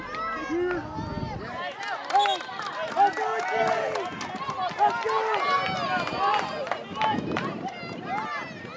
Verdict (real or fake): real